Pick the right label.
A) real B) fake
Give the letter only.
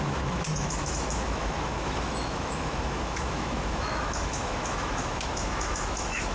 B